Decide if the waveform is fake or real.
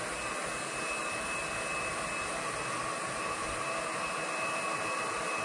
real